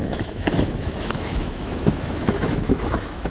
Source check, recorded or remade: remade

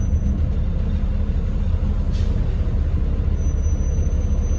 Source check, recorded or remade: recorded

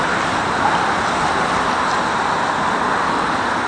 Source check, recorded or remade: recorded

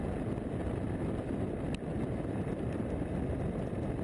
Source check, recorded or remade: recorded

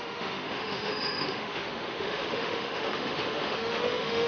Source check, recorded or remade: remade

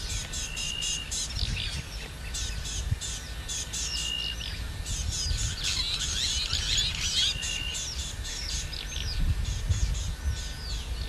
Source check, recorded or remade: recorded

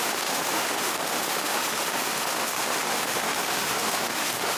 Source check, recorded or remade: remade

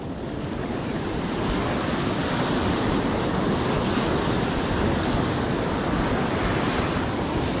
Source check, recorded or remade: recorded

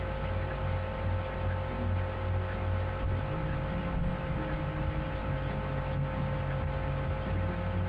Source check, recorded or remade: recorded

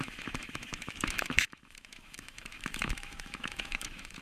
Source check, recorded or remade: remade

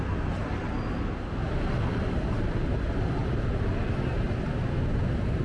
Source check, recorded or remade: recorded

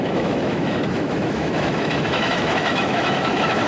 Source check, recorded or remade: remade